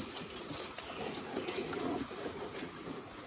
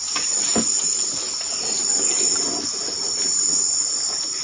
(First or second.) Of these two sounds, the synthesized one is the first